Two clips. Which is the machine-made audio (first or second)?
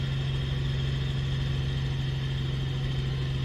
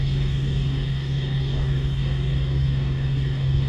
second